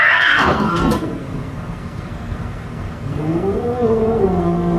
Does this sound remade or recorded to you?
remade